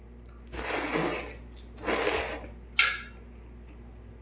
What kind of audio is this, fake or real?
real